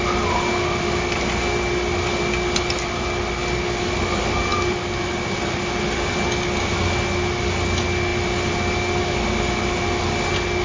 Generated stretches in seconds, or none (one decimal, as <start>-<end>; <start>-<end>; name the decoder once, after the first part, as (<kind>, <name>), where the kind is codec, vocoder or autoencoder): none